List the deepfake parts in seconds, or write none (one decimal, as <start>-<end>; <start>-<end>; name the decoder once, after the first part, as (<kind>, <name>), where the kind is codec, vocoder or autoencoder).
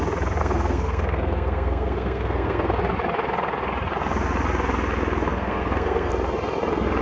0.4-2.8 (codec, SNAC); 5.3-6.1